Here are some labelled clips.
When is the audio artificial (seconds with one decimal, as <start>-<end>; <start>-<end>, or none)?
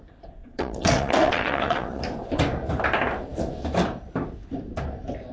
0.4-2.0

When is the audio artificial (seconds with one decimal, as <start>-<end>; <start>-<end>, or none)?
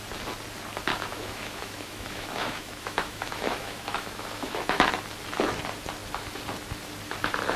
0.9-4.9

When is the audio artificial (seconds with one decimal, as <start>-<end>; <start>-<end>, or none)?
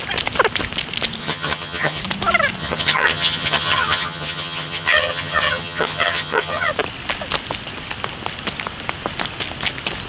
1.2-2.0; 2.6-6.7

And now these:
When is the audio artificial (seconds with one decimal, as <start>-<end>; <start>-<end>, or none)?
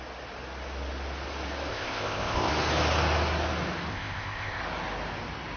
1.7-2.5; 3.9-4.6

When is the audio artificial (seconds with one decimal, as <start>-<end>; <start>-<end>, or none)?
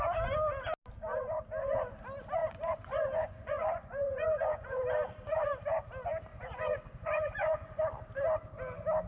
2.4-4.8; 6.3-7.8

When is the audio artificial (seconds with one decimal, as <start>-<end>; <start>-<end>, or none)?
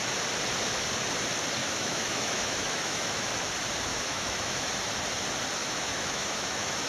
1.6-3.3; 3.9-4.7; 5.6-6.9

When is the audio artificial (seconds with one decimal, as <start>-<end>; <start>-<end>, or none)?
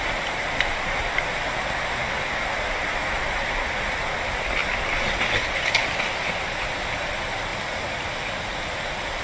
7.5-8.1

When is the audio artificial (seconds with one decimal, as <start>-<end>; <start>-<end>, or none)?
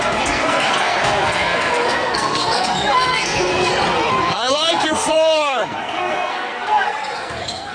0.0-3.7; 4.2-7.7